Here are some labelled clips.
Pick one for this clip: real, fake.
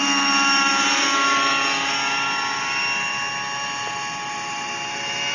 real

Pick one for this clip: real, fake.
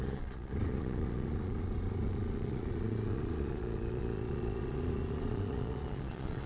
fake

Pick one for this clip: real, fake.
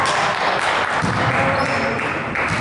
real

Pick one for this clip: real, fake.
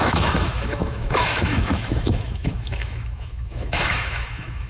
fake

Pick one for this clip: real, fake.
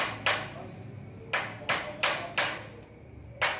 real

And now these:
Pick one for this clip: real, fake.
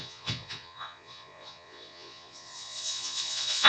fake